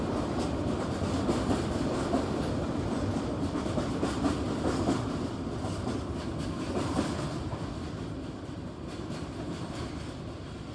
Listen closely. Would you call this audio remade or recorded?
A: remade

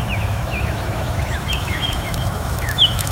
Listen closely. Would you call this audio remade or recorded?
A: remade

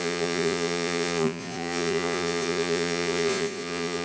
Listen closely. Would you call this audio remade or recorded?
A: remade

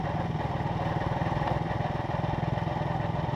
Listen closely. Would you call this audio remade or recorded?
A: recorded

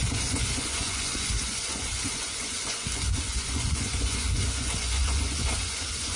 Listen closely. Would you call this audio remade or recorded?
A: remade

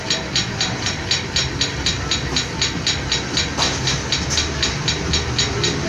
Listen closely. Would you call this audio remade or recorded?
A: recorded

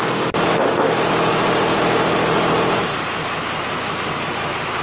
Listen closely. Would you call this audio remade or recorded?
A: recorded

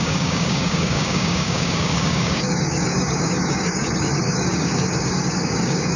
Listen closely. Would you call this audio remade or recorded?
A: remade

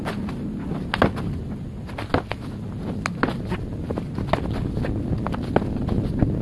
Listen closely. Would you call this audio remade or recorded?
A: recorded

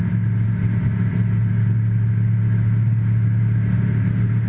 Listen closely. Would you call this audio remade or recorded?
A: recorded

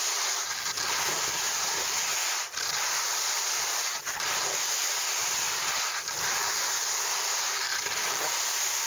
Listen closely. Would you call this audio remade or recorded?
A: recorded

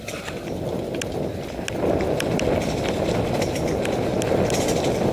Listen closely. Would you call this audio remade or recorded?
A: recorded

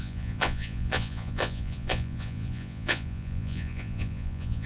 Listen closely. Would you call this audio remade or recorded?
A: remade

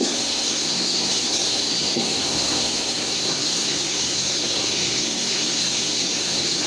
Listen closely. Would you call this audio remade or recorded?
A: remade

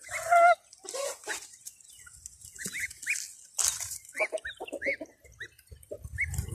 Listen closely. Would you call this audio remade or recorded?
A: recorded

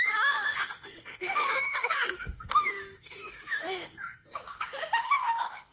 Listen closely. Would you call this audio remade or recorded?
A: remade